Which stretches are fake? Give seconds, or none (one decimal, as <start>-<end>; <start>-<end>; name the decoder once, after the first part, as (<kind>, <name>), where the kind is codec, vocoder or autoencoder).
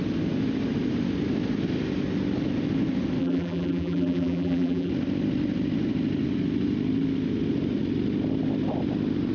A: 3.2-4.9 (vocoder, BigVGAN v2)